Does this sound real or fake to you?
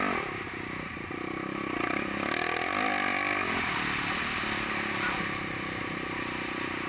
fake